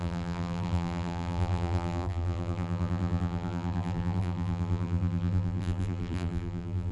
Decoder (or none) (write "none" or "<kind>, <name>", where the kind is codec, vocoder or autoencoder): vocoder, BigVGAN v2